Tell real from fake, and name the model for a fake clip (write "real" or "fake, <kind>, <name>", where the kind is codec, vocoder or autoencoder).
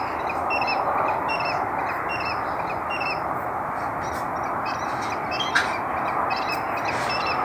real